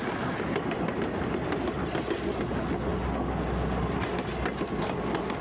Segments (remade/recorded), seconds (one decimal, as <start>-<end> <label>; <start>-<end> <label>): 0.0-5.4 recorded